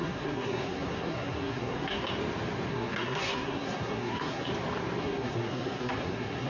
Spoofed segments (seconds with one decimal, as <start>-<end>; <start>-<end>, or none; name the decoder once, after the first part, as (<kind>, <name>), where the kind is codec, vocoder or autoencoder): 0.0-2.0 (codec, SNAC); 2.7-4.5; 5.0-6.5